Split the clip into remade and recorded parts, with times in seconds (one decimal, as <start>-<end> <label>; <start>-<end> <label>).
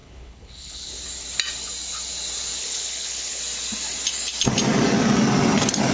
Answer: 0.0-0.9 remade; 0.9-2.6 recorded; 2.6-3.4 remade; 3.4-5.9 recorded